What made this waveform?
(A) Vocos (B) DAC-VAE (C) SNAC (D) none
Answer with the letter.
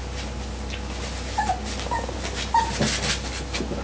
D